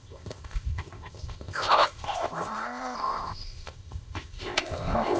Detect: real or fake fake